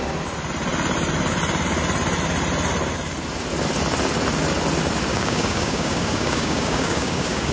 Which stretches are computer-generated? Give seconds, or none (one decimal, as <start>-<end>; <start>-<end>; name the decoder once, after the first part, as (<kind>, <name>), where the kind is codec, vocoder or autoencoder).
5.1-7.5 (codec, DAC)